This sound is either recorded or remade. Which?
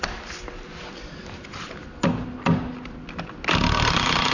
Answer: recorded